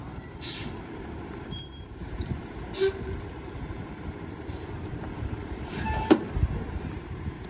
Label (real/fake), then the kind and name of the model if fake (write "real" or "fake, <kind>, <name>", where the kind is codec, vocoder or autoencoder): fake, vocoder, BigVGAN v2